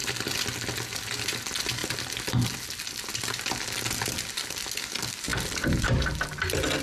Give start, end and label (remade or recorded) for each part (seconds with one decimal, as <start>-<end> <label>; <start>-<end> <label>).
0.0-0.6 remade; 0.6-1.8 recorded; 1.8-3.1 remade; 3.1-5.3 recorded; 5.3-6.2 remade; 6.2-6.8 recorded